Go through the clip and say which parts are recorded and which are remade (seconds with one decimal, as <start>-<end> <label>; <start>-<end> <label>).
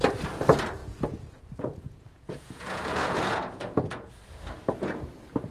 0.0-0.8 recorded; 0.8-4.1 remade; 4.1-5.5 recorded